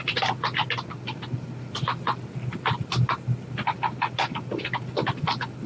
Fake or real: real